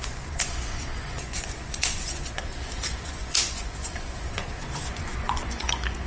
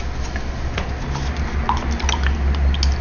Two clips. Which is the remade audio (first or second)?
first